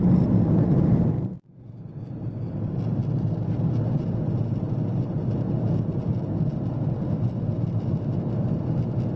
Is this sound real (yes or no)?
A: yes